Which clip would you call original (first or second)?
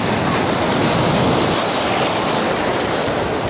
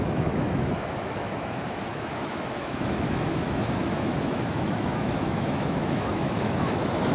first